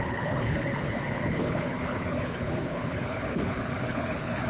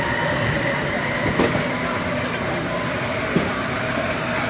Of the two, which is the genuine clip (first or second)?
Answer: second